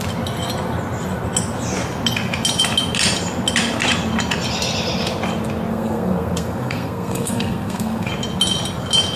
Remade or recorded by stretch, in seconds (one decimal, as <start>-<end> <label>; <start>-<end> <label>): 0.0-5.7 recorded; 5.7-8.1 remade; 8.1-9.2 recorded